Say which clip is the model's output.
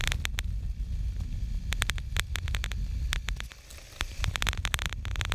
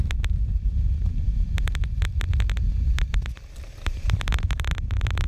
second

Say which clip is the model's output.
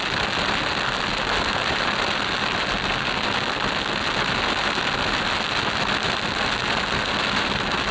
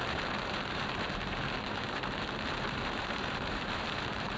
second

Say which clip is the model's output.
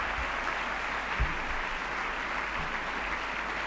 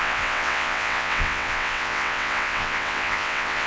second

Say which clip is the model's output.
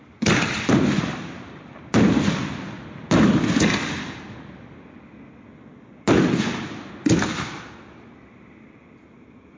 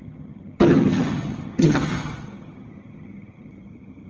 second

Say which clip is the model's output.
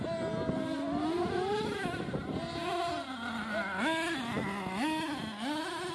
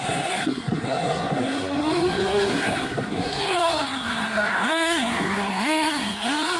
second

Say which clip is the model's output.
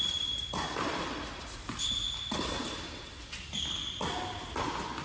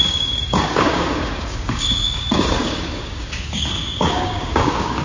second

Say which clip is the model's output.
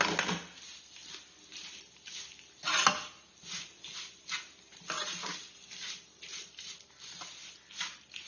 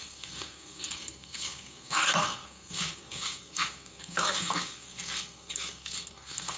second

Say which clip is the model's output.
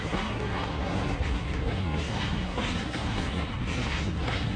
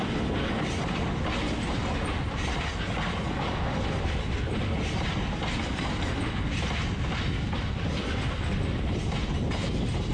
first